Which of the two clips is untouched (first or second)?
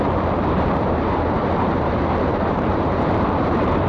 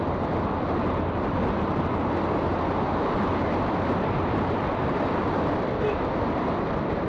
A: second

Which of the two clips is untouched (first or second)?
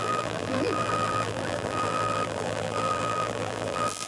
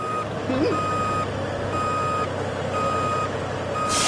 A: second